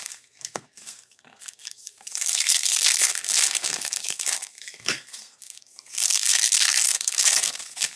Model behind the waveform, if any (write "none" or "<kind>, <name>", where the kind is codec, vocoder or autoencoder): codec, SNAC